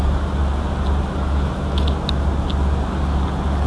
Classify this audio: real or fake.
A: real